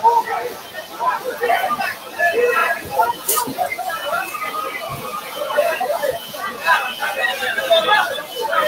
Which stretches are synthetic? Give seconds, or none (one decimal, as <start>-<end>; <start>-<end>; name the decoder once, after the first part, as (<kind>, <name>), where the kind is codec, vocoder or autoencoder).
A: 2.6-3.9 (vocoder, Vocos); 4.9-6.7

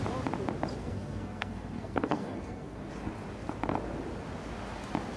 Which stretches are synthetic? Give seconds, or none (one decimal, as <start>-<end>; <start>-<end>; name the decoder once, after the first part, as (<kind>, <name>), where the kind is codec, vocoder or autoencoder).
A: 0.8-2.9 (codec, SNAC)

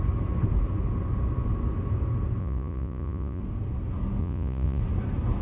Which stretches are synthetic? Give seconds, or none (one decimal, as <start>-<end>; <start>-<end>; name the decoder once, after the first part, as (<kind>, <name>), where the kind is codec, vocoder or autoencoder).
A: 2.4-3.4 (vocoder, Vocos); 4.2-4.8

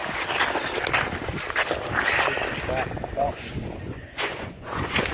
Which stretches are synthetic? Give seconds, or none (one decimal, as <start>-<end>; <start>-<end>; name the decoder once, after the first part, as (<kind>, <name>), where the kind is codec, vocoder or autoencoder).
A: 3.1-5.1 (vocoder, Vocos)

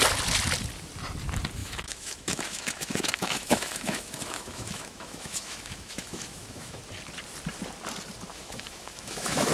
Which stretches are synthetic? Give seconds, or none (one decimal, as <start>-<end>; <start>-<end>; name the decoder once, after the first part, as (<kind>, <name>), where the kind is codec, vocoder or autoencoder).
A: 1.6-6.8 (autoencoder, DAC-VAE); 8.3-9.5